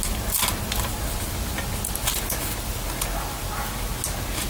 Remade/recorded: recorded